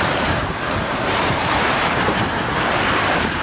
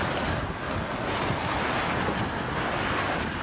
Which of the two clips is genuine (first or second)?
second